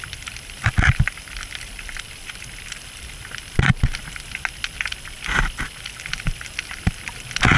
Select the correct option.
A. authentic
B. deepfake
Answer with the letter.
A